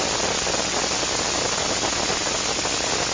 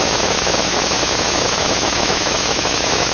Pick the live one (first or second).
first